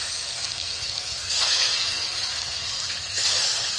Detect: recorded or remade remade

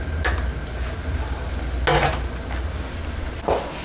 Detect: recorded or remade recorded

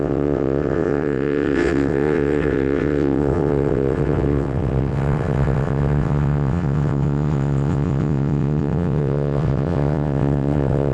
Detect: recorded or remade remade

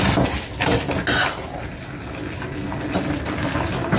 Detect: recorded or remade recorded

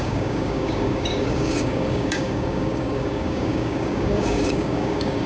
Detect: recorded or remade remade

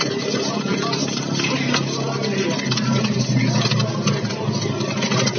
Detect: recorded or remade recorded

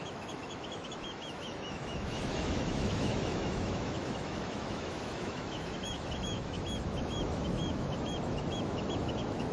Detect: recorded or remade remade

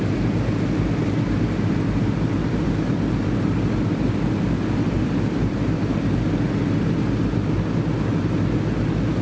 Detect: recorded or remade recorded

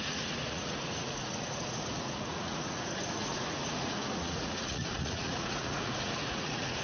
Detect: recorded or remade remade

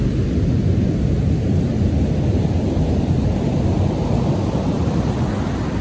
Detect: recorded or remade recorded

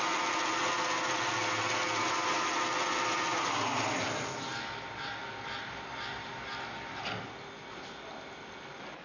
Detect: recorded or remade recorded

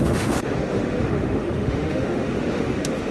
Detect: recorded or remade remade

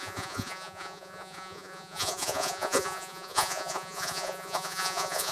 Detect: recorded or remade remade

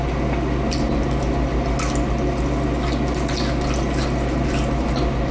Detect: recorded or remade recorded